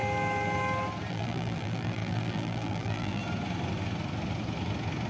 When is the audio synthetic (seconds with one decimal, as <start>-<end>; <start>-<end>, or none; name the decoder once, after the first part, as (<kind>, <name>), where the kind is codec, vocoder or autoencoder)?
1.1-3.2 (vocoder, BigVGAN v2)